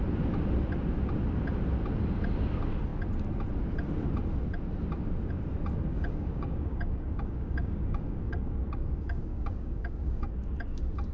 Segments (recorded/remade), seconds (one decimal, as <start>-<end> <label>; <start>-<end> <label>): 0.0-5.9 recorded; 5.9-10.4 remade; 10.4-11.1 recorded